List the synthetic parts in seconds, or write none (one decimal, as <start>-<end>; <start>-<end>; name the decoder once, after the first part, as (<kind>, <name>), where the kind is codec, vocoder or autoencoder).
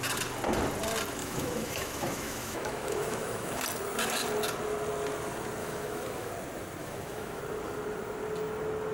1.2-3.6 (autoencoder, DAC-VAE); 5.6-6.3; 6.8-7.4